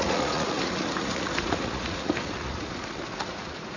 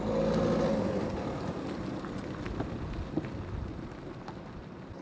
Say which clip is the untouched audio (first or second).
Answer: second